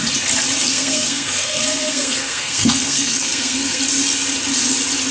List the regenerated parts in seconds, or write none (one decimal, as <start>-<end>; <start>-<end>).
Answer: 0.7-3.8